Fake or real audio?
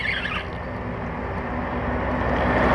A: real